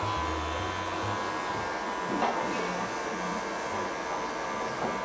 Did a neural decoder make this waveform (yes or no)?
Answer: no